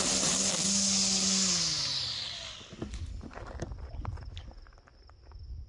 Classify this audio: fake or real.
real